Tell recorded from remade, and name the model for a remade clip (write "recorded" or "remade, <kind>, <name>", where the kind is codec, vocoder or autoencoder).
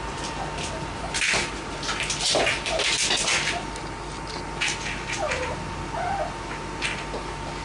recorded